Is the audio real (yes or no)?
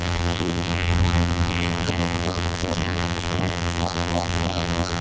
no